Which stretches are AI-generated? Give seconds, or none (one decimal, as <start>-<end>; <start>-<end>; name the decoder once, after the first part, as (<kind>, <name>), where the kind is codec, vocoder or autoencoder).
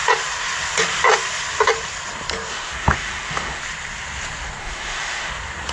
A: 2.5-3.6 (autoencoder, DAC-VAE); 4.6-5.3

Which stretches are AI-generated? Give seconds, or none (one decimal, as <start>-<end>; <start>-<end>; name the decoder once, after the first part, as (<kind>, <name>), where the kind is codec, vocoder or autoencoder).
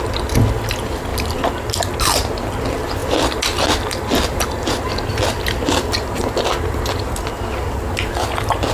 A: none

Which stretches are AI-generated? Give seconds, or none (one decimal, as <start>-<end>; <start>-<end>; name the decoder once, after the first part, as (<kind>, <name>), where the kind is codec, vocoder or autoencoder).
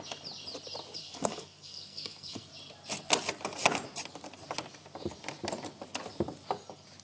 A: 1.0-2.5 (codec, SNAC)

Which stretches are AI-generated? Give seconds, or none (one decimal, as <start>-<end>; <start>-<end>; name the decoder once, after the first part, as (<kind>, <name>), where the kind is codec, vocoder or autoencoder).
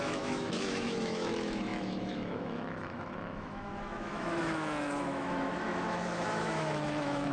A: 0.0-7.3 (autoencoder, DAC-VAE)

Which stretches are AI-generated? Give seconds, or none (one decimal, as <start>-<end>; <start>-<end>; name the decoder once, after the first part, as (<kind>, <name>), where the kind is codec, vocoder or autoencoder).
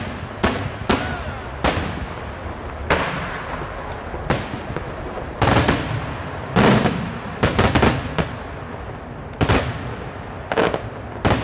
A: none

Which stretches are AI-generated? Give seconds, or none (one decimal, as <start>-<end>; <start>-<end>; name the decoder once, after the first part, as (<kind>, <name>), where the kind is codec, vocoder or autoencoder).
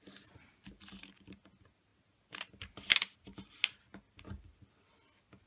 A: none